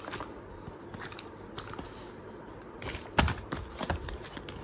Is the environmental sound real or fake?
real